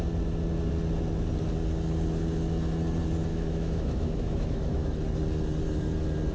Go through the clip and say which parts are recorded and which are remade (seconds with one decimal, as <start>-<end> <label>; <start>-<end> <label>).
0.0-3.3 recorded; 3.3-5.0 remade; 5.0-6.3 recorded